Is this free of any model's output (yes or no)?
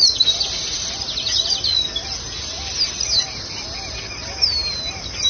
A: yes